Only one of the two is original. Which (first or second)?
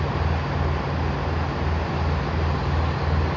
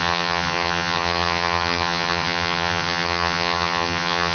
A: first